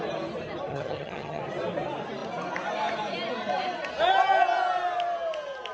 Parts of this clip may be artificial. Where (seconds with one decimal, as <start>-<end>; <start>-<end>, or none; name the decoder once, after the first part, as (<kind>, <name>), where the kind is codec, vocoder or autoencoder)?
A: 0.7-1.4 (vocoder, HiFi-GAN)